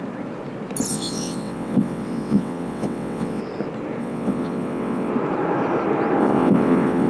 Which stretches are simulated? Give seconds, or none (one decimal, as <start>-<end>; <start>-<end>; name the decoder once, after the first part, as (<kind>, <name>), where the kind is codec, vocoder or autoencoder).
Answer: 0.9-3.4 (vocoder, WaveNeXt); 4.0-5.1; 6.2-7.1